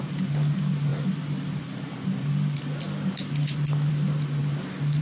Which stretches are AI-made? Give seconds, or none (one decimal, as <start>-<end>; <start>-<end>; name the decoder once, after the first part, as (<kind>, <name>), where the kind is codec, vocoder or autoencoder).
none

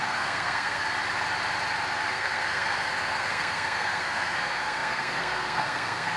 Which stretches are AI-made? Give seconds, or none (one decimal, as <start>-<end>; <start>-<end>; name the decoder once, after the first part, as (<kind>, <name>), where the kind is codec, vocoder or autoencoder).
0.0-0.8 (codec, SNAC); 2.1-6.2

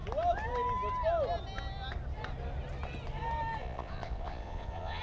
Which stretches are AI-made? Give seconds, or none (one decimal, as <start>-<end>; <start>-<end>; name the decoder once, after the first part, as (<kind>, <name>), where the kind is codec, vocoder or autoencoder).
3.6-5.0 (vocoder, Vocos)